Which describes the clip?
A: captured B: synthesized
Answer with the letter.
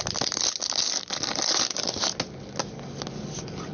A